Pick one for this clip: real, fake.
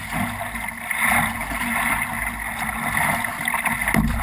real